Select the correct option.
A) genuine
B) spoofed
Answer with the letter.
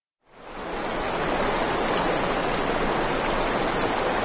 A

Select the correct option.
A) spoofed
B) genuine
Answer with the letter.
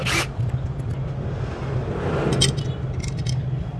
B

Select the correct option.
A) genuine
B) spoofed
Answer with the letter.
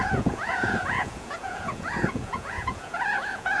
B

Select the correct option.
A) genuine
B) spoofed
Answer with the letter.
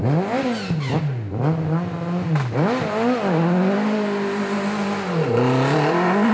A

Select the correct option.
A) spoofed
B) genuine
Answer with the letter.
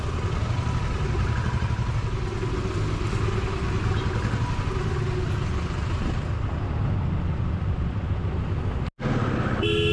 B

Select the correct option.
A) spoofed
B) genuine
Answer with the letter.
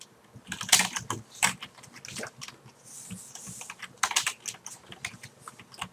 B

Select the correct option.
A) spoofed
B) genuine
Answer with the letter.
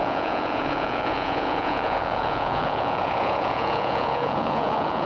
A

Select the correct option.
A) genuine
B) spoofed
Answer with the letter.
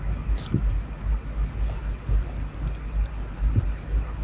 A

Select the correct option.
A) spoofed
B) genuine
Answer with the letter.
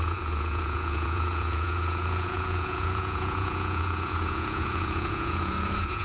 A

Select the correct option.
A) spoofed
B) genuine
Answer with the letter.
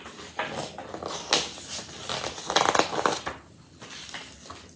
B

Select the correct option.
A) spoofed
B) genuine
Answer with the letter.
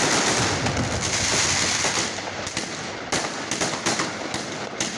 B